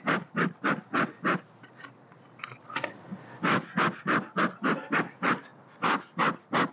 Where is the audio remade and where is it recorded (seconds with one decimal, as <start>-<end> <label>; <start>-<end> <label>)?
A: 0.0-6.7 recorded